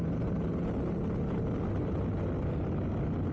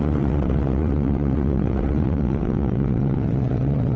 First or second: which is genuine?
first